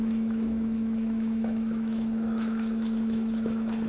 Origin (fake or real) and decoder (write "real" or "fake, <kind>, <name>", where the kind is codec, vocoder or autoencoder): fake, autoencoder, DAC-VAE